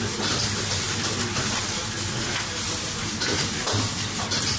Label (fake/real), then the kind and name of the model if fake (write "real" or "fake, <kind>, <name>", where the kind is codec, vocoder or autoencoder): real